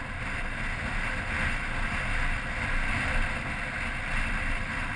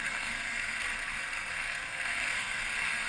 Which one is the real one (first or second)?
first